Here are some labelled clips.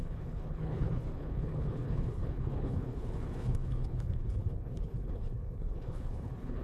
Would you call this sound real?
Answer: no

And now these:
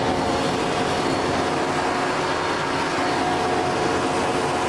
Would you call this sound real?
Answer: yes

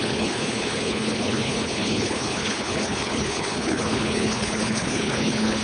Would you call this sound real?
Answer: no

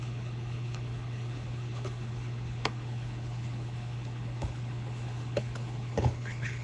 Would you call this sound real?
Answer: no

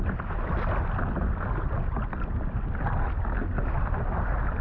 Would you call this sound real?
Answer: yes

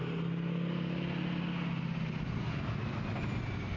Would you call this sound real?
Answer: yes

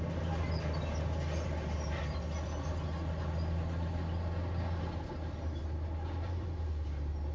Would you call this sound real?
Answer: yes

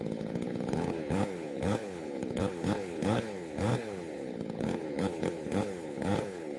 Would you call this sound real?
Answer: no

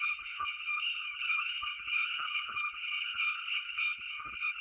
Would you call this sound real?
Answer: no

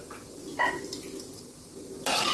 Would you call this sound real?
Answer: yes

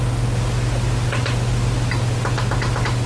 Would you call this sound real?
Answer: yes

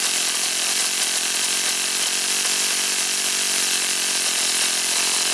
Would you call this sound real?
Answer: yes